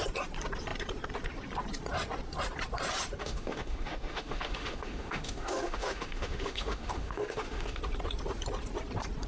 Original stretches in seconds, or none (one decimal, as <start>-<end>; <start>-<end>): 0.0-3.2; 7.8-9.3